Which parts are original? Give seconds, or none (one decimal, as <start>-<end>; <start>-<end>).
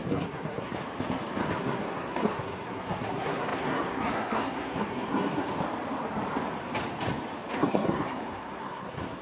0.7-1.6; 5.5-7.5